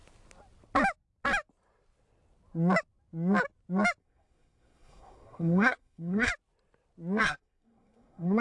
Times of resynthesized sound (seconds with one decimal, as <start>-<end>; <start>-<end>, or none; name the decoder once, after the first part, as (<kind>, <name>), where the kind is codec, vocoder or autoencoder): 4.0-6.3 (codec, SNAC); 7.2-8.4